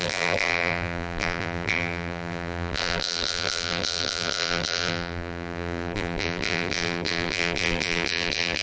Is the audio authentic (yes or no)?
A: no